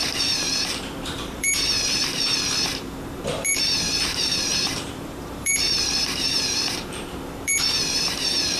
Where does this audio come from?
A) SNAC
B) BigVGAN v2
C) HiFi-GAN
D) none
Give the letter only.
B